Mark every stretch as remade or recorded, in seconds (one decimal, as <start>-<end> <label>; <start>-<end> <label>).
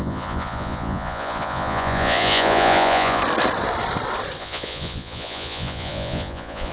0.0-3.2 remade; 3.2-4.4 recorded; 4.4-6.7 remade